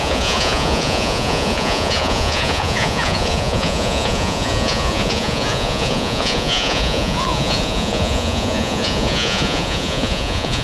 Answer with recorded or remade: remade